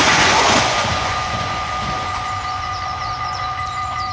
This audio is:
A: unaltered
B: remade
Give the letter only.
B